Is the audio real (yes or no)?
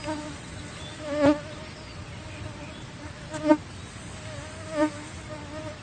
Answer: yes